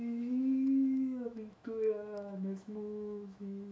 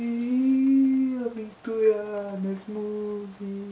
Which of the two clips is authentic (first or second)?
second